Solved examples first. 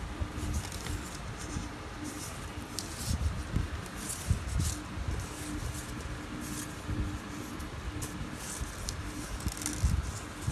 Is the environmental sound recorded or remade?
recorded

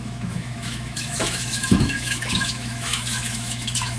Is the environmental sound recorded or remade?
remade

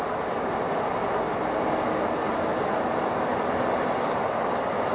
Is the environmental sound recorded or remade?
recorded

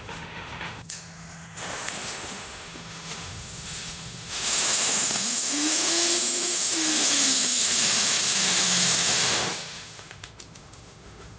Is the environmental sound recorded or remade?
remade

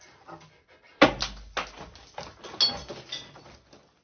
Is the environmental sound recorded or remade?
recorded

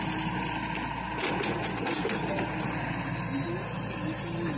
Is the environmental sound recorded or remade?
recorded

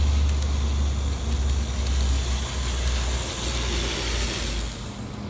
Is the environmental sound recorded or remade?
recorded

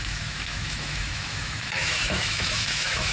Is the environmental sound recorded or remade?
remade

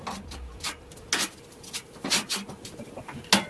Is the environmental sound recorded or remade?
recorded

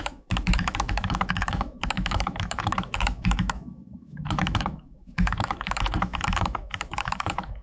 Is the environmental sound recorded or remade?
remade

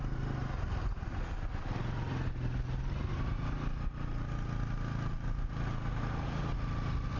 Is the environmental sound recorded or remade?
recorded